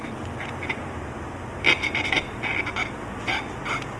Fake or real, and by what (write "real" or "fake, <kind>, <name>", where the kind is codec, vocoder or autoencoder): real